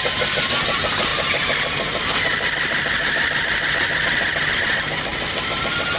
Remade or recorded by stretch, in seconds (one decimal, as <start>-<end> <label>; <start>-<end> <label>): 0.0-5.1 recorded; 5.1-5.6 remade; 5.6-6.0 recorded